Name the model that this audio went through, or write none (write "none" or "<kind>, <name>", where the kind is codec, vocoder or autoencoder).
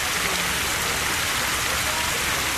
none